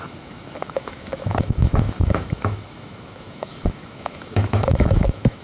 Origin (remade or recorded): remade